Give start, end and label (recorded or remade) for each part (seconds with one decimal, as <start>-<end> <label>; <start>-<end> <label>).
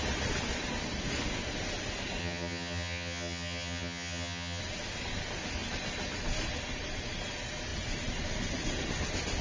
0.0-2.2 recorded; 2.2-4.6 remade; 4.6-9.4 recorded